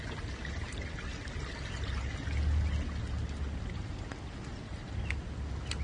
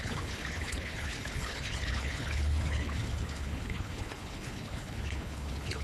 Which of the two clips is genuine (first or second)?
first